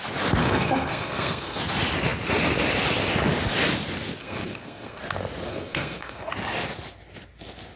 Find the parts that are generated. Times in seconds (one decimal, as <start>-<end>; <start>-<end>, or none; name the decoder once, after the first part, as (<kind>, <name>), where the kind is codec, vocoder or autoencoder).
0.4-1.6 (codec, SNAC); 4.2-5.0; 5.5-6.3